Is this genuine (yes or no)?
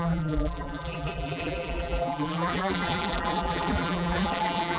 no